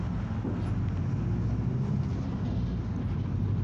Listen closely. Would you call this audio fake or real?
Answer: real